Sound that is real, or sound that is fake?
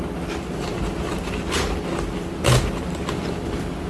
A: real